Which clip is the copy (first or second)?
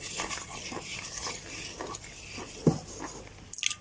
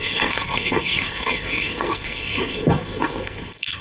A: second